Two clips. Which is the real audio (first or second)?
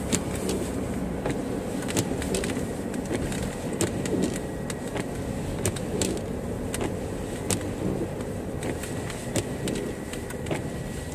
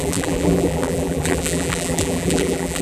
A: first